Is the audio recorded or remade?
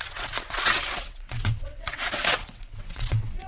remade